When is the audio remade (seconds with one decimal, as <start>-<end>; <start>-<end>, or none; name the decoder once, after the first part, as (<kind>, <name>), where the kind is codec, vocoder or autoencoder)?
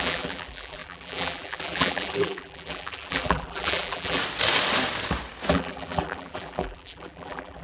0.0-4.2 (vocoder, BigVGAN v2); 5.5-7.6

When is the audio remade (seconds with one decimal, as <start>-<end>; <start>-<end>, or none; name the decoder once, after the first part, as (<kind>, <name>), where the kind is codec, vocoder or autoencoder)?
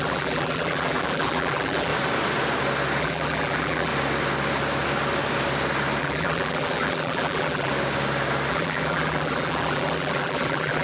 0.0-1.9 (vocoder, BigVGAN v2); 3.0-3.9; 6.0-7.7; 8.5-10.8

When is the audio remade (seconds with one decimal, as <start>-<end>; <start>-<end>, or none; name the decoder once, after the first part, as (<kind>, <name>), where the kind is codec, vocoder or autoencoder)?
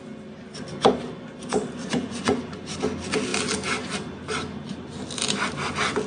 1.8-2.4 (vocoder, Vocos)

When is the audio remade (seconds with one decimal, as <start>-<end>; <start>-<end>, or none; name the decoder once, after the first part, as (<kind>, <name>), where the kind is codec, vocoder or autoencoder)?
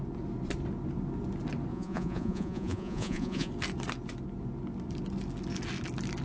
1.7-3.5 (vocoder, Vocos)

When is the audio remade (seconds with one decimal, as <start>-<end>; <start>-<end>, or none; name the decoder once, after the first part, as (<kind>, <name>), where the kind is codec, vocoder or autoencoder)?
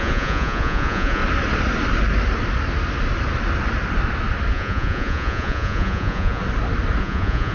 0.0-1.2 (vocoder, Vocos); 4.5-6.4; 7.0-7.5